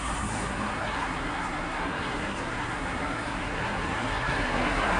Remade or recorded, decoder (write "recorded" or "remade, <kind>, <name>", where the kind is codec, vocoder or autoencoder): remade, codec, SNAC